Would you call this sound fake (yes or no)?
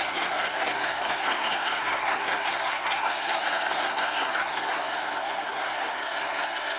yes